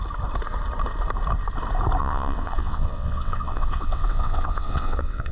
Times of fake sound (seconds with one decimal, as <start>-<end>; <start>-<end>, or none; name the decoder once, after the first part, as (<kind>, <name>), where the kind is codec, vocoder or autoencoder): 2.0-5.3 (vocoder, WaveNeXt)